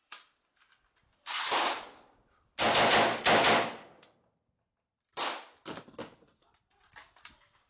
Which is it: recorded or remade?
recorded